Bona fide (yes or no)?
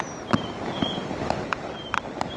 yes